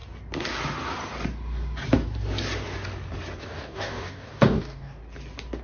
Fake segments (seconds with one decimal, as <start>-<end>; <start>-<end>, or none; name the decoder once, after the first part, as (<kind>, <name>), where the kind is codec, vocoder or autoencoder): 3.4-5.0 (codec, DAC)